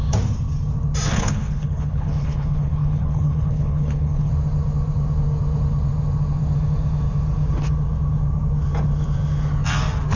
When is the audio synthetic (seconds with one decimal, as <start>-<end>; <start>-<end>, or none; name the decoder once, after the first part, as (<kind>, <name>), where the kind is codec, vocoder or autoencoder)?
1.1-4.3 (codec, HILCodec)